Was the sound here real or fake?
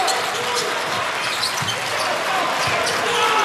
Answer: real